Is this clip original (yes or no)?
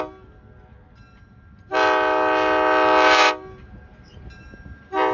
yes